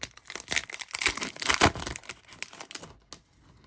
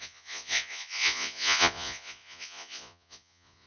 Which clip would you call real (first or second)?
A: first